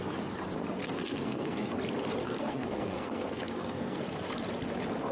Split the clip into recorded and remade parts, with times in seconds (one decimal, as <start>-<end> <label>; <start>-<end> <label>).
0.0-0.8 recorded; 0.8-1.7 remade; 1.7-2.2 recorded; 2.2-4.0 remade; 4.0-5.1 recorded